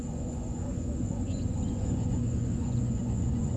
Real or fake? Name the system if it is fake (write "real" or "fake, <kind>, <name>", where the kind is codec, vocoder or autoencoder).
fake, vocoder, Vocos